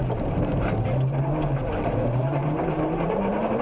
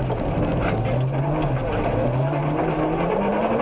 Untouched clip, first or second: second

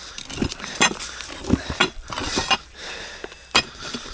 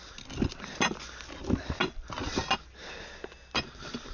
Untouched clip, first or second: second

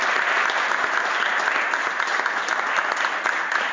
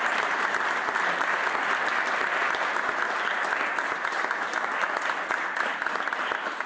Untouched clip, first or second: first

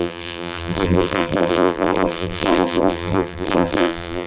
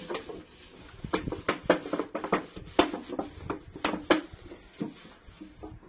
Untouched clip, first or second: second